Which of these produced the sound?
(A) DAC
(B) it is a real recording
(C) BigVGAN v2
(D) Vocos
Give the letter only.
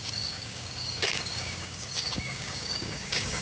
A